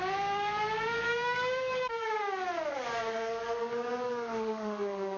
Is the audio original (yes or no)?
no